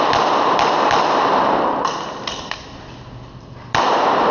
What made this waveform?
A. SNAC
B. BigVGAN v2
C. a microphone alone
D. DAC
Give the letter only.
C